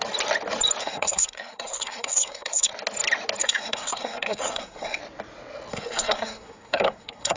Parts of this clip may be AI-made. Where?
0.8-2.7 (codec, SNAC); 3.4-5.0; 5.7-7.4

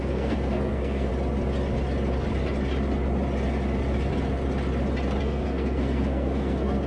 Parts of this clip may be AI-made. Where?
0.0-1.1 (codec, SNAC); 5.2-6.9

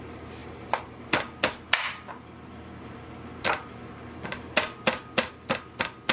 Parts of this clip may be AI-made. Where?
none

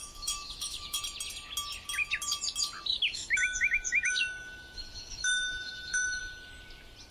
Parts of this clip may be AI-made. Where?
0.0-1.0 (autoencoder, DAC-VAE); 3.1-6.2